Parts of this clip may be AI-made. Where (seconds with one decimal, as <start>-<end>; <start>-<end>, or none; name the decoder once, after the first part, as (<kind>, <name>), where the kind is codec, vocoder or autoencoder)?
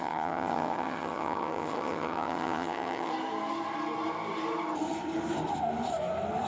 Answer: 0.0-3.1 (vocoder, HiFi-GAN)